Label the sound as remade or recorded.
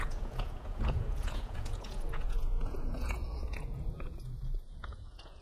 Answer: remade